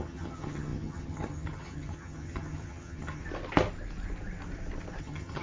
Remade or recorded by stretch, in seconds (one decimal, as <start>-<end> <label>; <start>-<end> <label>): 0.0-3.2 remade; 3.2-5.0 recorded; 5.0-5.4 remade